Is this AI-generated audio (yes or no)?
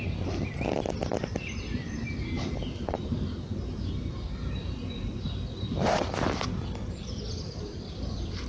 no